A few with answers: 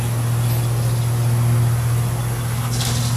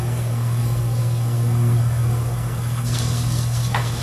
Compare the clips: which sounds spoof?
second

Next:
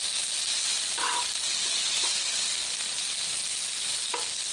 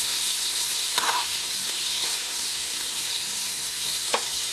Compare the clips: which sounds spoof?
second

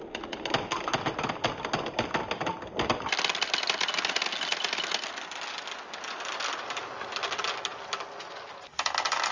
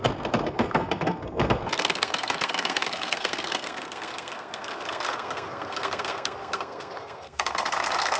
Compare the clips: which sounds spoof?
second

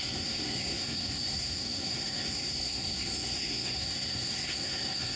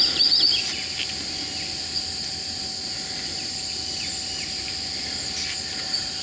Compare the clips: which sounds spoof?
first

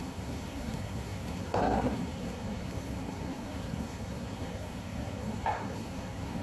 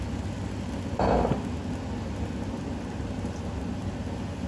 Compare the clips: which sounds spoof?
first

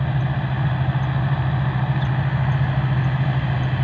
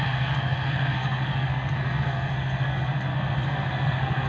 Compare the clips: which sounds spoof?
second